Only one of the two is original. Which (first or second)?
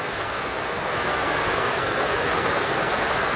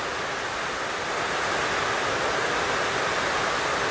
second